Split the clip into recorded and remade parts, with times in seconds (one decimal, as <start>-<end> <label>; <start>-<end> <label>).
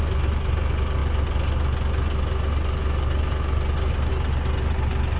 0.0-5.2 recorded